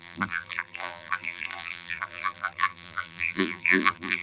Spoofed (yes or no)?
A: yes